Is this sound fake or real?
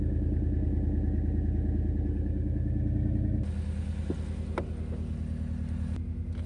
real